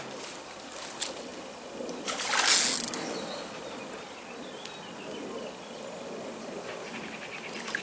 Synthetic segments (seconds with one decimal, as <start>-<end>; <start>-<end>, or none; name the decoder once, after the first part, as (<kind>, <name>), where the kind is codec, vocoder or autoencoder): none